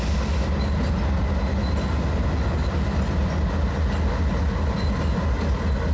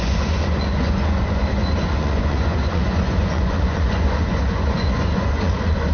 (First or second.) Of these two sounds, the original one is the first